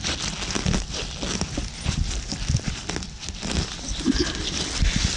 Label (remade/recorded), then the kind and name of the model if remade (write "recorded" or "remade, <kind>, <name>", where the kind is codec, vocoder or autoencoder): recorded